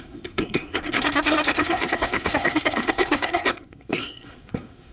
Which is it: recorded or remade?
remade